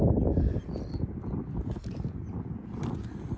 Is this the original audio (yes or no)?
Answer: yes